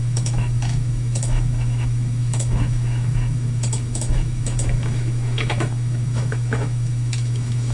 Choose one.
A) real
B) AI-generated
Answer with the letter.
B